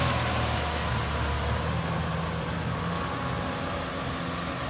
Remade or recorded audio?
recorded